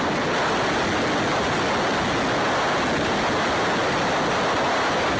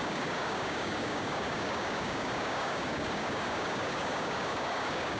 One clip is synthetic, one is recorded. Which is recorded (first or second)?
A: first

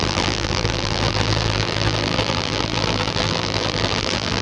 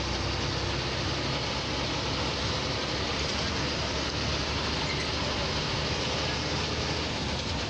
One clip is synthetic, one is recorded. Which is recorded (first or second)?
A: second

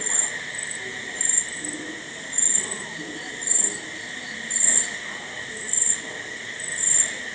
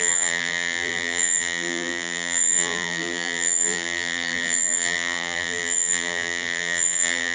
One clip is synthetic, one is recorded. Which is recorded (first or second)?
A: first